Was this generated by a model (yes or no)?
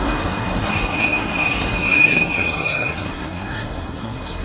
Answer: yes